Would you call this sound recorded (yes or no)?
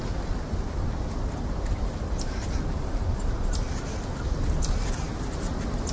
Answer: yes